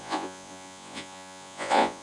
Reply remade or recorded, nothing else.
remade